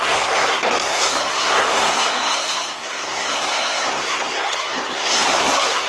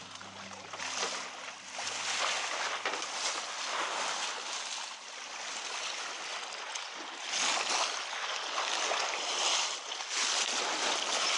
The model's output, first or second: first